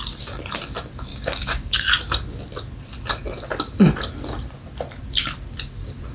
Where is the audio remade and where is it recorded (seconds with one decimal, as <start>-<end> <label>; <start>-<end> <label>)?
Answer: 0.0-1.1 recorded; 1.1-1.9 remade; 1.9-6.1 recorded